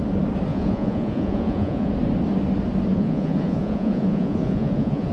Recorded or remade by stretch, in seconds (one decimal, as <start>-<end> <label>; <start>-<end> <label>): 0.0-0.5 recorded; 0.5-1.9 remade; 1.9-2.9 recorded; 2.9-5.1 remade